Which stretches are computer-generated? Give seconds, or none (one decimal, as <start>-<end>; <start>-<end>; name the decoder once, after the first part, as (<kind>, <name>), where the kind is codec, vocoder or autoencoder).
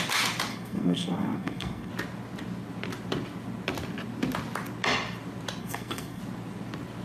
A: 0.5-1.9 (codec, SNAC); 5.6-6.2